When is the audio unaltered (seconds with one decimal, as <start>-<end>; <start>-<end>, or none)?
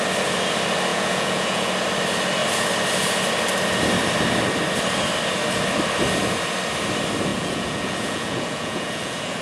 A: 0.0-0.9; 1.7-7.3